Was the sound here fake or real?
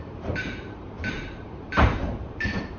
fake